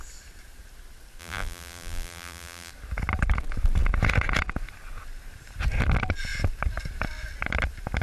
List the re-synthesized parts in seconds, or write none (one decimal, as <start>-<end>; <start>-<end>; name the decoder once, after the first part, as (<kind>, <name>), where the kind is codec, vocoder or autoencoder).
1.2-2.7 (vocoder, BigVGAN v2)